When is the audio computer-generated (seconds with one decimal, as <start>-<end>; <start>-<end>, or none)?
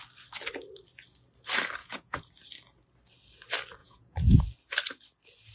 1.8-2.3; 3.8-4.4